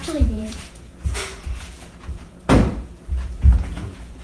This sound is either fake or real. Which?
fake